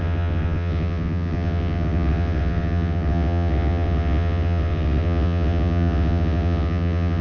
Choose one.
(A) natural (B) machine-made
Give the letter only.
B